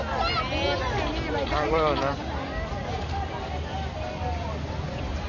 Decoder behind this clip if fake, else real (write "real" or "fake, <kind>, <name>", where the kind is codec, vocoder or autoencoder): real